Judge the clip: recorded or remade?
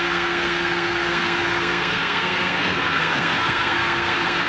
remade